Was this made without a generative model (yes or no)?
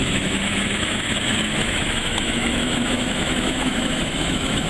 no